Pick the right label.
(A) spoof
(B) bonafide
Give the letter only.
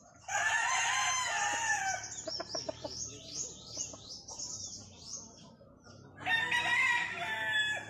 B